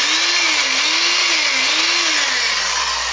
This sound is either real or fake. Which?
real